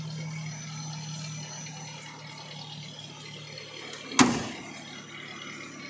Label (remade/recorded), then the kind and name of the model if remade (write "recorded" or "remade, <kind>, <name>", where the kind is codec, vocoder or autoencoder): recorded